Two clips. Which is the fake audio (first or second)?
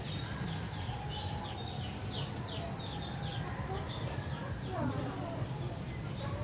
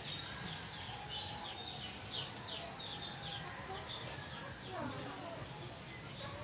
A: first